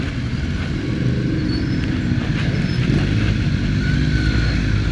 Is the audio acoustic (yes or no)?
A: yes